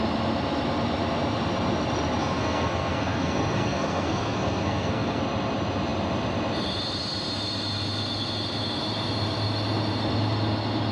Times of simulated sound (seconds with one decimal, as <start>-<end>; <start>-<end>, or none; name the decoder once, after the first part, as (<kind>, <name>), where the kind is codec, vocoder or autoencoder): 2.2-5.2 (codec, SNAC)